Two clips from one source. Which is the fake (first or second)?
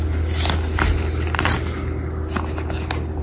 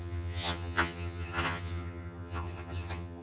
second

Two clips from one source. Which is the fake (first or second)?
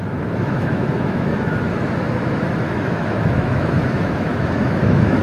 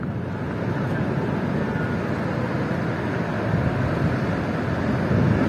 first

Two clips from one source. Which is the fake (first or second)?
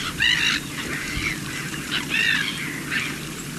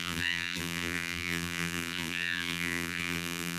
second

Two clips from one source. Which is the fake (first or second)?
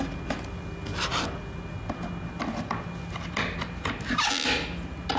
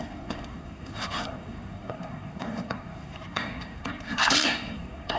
second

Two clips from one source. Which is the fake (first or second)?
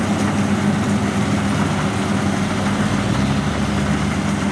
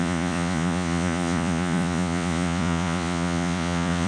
second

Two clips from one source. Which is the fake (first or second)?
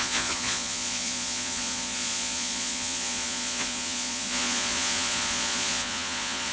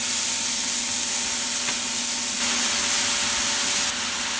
first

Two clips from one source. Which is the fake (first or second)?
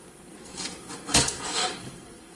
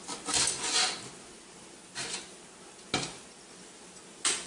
first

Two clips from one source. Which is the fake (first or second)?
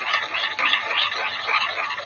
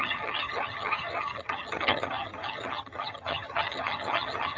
second